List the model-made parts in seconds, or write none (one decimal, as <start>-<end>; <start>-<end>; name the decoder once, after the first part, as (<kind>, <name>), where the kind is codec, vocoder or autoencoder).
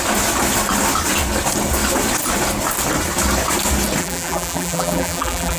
4.0-5.6 (vocoder, BigVGAN v2)